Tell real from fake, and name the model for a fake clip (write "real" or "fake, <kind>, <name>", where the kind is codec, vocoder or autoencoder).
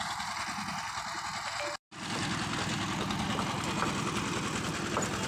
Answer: real